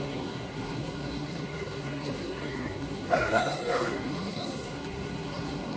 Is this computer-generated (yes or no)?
yes